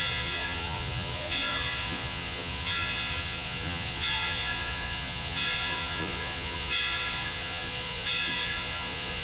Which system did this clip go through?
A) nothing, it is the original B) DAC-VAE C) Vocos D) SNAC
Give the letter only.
C